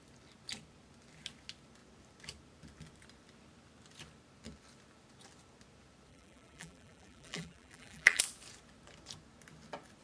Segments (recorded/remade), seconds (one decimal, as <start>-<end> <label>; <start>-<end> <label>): 0.0-6.1 recorded; 6.1-8.2 remade; 8.2-10.0 recorded